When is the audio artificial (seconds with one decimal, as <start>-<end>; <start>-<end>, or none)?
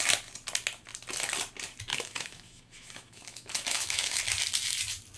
1.9-4.2